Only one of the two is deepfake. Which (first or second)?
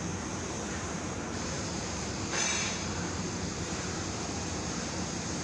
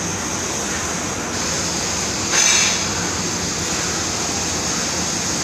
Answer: first